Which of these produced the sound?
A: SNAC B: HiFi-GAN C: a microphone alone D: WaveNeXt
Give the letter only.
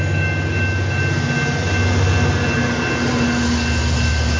C